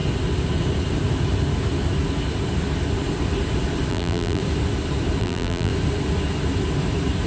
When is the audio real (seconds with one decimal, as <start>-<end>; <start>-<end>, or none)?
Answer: 0.0-3.9; 4.4-5.2; 5.7-7.3